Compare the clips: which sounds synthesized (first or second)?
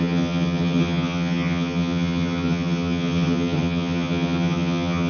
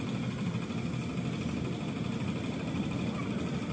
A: first